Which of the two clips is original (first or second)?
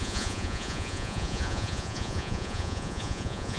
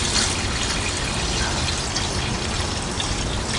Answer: second